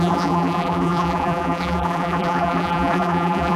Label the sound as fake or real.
fake